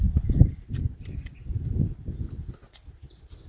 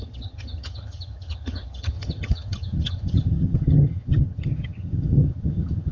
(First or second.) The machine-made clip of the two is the second